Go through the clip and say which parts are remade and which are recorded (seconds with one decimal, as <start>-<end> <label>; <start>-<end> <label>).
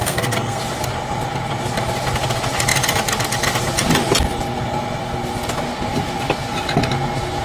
0.0-0.6 remade; 0.6-7.4 recorded